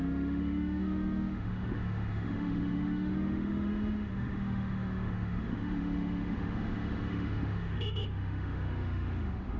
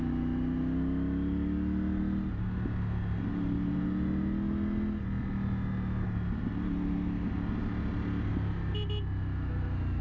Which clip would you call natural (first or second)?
second